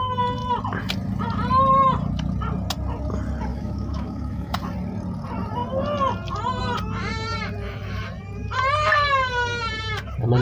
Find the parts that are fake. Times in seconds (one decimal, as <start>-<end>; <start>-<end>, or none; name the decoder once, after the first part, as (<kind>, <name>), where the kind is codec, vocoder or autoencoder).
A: 3.5-4.6 (autoencoder, DAC-VAE)